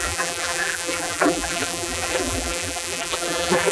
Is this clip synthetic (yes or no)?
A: yes